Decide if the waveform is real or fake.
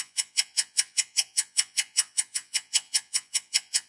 fake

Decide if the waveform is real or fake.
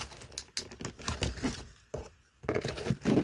real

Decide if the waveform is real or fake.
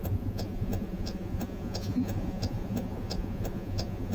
fake